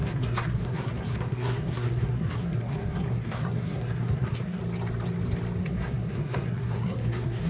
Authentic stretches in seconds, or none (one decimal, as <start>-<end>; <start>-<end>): 4.6-5.6

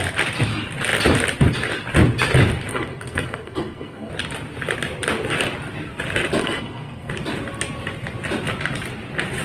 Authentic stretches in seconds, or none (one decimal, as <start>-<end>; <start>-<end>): 0.0-2.7; 4.1-6.4; 7.1-9.4

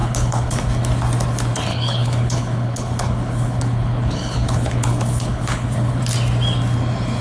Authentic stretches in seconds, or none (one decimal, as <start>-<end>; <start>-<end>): 0.7-1.7; 6.0-7.2

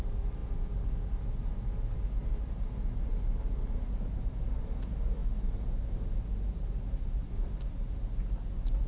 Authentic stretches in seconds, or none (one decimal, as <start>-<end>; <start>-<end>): 0.0-8.9

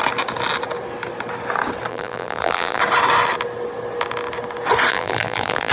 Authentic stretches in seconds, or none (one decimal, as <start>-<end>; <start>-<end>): 0.0-1.9; 2.8-4.9